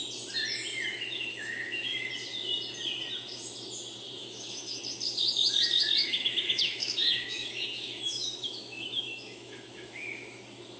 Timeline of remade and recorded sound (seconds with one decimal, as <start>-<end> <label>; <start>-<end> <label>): 0.0-0.9 recorded; 0.9-2.1 remade; 2.1-4.2 recorded; 4.2-4.8 remade; 4.8-6.0 recorded; 6.0-10.4 remade; 10.4-10.8 recorded